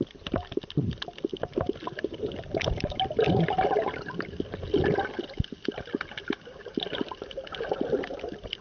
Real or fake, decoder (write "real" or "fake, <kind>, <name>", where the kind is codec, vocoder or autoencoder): real